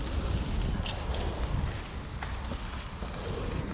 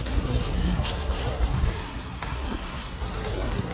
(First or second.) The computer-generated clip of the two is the second